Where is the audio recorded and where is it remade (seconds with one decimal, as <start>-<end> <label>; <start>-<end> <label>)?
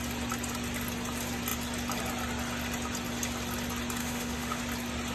0.0-4.0 recorded; 4.0-4.6 remade; 4.6-5.1 recorded